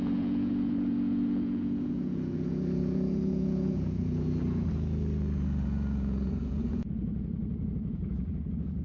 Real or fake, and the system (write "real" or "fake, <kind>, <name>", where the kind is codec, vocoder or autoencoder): fake, vocoder, Vocos